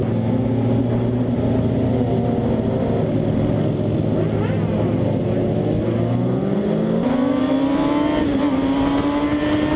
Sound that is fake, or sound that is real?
real